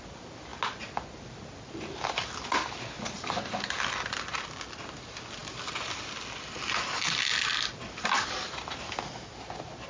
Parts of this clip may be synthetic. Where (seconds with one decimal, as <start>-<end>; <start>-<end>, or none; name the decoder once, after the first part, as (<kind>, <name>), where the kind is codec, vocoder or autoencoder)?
none